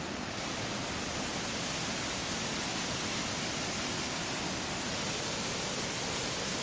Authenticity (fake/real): real